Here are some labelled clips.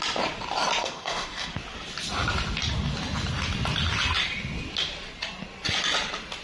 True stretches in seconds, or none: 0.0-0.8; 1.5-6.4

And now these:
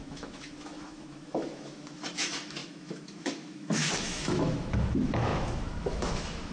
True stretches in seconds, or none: none

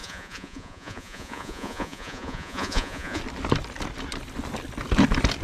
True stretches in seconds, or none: 3.2-5.4

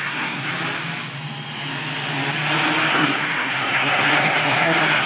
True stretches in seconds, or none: 0.5-2.9